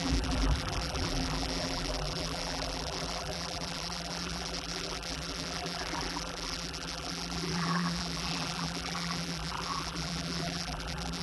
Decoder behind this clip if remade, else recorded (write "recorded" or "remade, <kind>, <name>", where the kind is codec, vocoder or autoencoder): remade, vocoder, BigVGAN v2